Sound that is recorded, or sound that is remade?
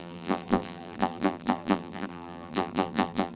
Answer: remade